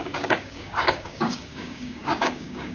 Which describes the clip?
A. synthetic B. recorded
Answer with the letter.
A